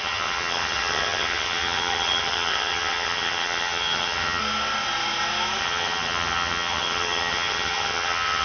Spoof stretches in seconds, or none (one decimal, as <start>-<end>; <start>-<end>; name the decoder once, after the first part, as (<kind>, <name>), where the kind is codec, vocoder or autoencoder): 0.0-4.4 (vocoder, HiFi-GAN); 5.6-8.4